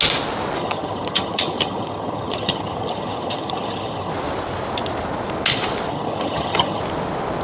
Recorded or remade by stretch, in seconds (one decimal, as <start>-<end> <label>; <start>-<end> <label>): 0.0-0.6 recorded; 0.6-4.1 remade; 4.1-5.9 recorded; 5.9-6.8 remade; 6.8-7.4 recorded